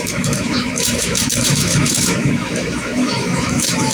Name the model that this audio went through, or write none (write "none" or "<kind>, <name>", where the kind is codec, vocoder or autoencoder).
autoencoder, DAC-VAE